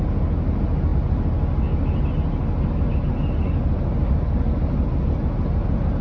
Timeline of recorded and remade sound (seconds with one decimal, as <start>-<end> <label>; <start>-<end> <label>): 0.0-6.0 recorded